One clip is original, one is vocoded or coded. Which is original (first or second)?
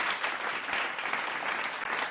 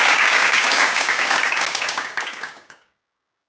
first